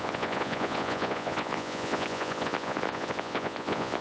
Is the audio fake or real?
fake